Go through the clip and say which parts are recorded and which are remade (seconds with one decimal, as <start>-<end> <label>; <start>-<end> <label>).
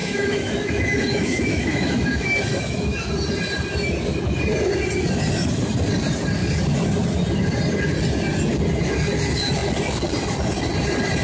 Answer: 0.0-3.1 remade; 3.1-11.2 recorded